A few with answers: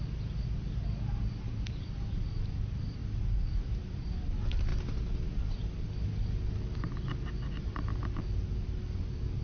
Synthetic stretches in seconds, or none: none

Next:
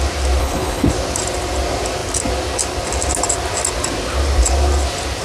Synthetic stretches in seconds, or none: 0.4-0.9 (codec, HILCodec)

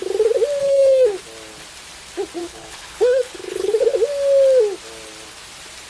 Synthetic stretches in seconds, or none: 0.6-1.2 (codec, HILCodec); 2.4-3.9